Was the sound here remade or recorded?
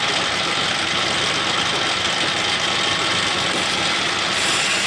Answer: recorded